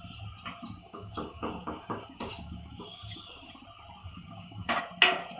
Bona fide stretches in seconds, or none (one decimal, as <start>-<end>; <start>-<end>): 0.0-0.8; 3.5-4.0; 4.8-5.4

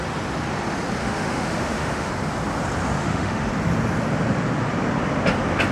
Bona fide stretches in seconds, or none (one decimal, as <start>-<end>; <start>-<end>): 0.0-1.0; 2.1-3.0; 3.5-5.7

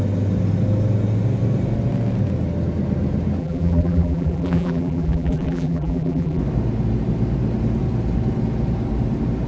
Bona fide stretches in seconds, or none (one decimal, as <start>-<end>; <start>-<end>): 0.0-3.4; 6.4-9.5

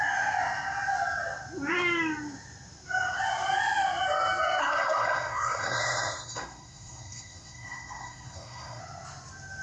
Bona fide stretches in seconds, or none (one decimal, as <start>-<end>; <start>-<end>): 0.0-4.6; 8.8-9.6

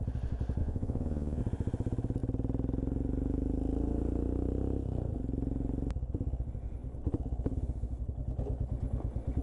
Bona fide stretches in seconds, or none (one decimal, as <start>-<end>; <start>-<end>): 0.0-0.6; 1.4-9.4

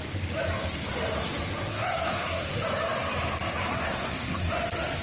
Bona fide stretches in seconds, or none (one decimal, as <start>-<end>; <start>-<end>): 0.0-1.7; 2.5-3.7; 4.5-5.0